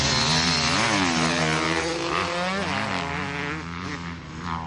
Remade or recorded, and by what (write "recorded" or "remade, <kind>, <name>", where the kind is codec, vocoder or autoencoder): recorded